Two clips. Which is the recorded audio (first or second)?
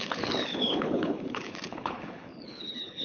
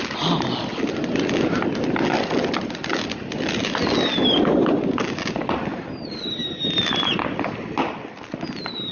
second